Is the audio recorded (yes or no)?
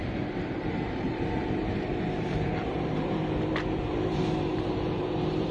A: no